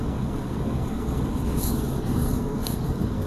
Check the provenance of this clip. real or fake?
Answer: fake